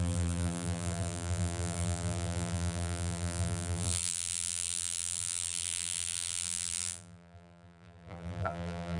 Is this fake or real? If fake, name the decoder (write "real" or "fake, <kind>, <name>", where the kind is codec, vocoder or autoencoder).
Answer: fake, vocoder, BigVGAN v2